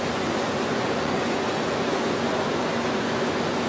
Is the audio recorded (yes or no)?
no